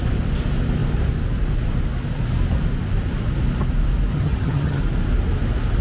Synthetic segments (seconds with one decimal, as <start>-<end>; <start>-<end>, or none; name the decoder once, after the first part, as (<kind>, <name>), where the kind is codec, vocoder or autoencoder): 4.1-4.8 (vocoder, HiFi-GAN)